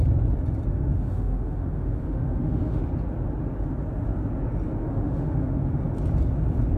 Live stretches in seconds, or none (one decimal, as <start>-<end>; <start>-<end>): 0.0-0.7; 2.8-4.8; 5.8-6.8